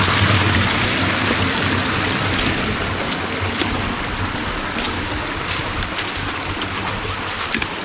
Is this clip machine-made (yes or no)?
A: no